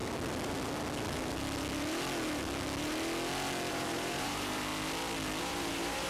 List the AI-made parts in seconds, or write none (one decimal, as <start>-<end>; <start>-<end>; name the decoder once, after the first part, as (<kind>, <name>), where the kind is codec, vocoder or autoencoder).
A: 3.7-4.7 (vocoder, BigVGAN v2); 5.4-6.1